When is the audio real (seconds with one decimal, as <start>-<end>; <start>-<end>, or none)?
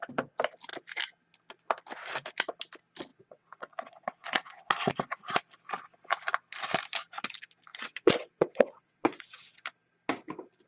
0.0-3.1; 4.9-7.7; 9.6-10.7